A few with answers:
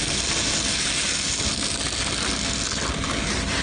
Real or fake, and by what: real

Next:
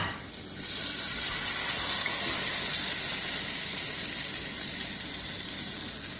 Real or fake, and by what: real